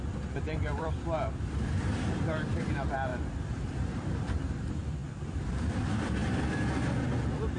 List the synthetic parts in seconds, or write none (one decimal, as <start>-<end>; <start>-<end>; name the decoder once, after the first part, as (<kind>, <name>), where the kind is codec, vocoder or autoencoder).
0.0-3.1 (vocoder, BigVGAN v2); 3.9-5.0; 5.5-6.2